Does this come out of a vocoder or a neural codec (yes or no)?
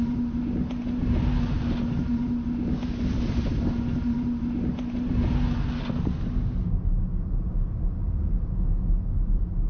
no